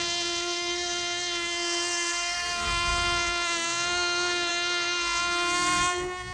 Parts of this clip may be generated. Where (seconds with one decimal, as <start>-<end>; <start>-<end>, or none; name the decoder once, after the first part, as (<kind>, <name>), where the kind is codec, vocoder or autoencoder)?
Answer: 0.0-6.3 (codec, SNAC)